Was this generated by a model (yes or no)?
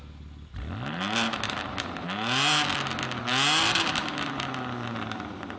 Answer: no